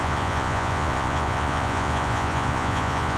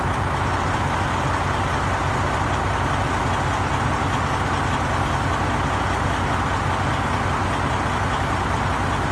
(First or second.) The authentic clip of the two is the second